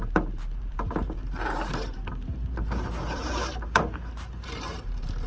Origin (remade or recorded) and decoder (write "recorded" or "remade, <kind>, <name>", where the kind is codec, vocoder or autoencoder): remade, vocoder, BigVGAN v2